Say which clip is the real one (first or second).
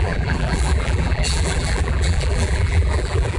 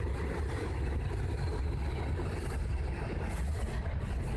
second